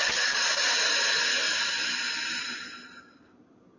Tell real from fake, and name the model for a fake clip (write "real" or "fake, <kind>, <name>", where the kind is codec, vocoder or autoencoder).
real